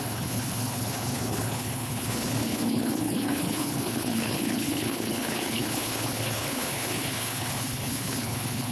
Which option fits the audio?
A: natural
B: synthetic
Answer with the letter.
B